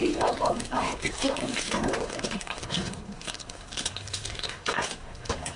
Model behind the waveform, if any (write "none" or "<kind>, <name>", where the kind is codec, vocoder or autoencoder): codec, SNAC